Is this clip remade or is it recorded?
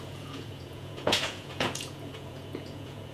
remade